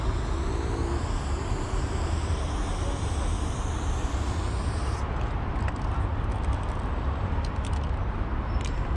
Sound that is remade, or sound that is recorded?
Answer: recorded